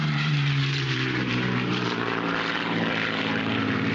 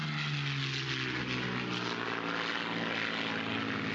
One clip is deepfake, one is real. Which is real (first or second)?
second